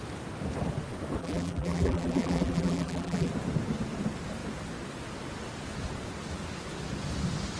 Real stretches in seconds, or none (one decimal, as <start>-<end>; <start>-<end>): 0.0-1.2; 3.3-7.6